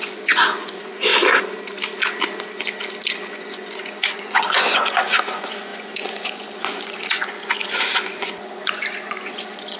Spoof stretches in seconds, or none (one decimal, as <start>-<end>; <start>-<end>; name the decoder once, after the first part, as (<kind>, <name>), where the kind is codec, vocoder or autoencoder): 0.0-1.1 (vocoder, Vocos); 3.1-9.8